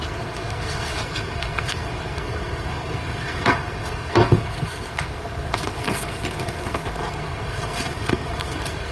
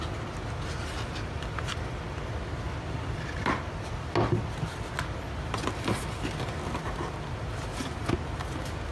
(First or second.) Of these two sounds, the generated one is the first